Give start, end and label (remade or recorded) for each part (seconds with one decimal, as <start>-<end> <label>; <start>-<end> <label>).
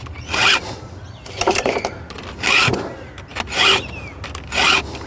0.0-5.1 recorded